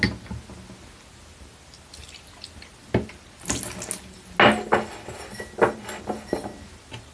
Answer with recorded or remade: recorded